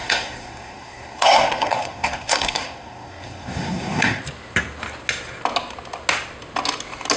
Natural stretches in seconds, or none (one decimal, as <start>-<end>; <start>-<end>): 4.2-7.2